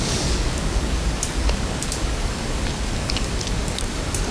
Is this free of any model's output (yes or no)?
no